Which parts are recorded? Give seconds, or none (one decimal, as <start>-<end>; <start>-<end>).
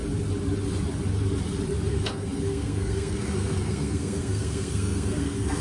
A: 0.0-1.9